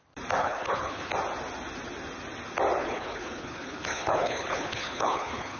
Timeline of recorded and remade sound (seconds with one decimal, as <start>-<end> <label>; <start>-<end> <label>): 0.0-0.4 recorded; 0.4-1.1 remade; 1.1-2.8 recorded; 2.8-5.6 remade